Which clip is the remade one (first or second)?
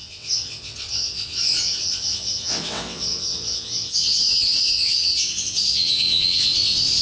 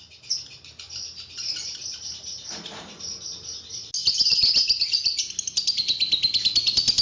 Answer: first